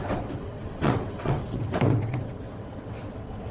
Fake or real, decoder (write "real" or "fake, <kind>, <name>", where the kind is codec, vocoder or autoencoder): fake, vocoder, WaveNeXt